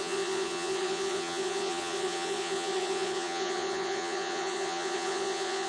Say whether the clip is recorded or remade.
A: remade